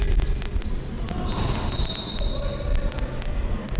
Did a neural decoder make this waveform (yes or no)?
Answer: no